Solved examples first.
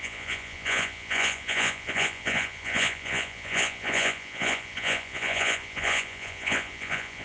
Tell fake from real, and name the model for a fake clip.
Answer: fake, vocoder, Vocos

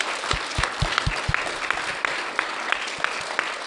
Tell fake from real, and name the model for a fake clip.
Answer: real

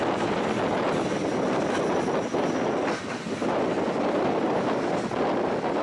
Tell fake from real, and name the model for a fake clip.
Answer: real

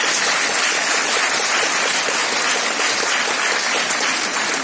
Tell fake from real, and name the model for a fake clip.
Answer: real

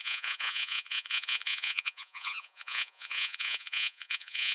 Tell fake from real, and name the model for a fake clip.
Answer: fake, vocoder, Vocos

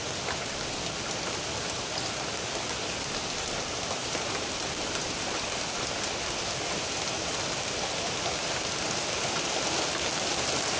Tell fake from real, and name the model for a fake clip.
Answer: real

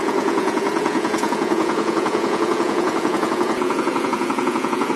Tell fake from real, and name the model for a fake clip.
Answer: fake, vocoder, Vocos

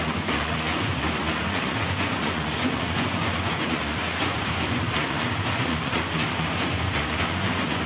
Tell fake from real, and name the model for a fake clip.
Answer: fake, vocoder, Vocos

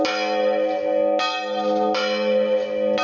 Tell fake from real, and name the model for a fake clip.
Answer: real